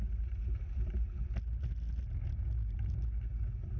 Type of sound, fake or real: real